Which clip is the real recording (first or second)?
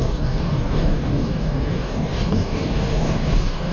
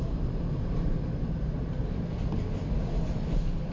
second